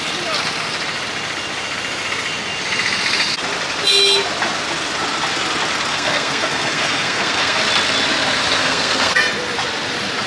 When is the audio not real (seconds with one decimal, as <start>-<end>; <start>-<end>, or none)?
5.9-7.6; 8.6-9.2